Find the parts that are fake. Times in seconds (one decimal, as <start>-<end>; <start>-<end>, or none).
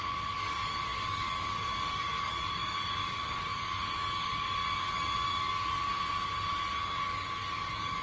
0.0-5.9; 6.5-8.0